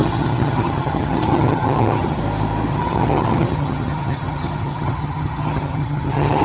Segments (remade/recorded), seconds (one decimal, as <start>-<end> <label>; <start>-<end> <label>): 0.0-2.2 remade; 2.2-2.7 recorded; 2.7-6.4 remade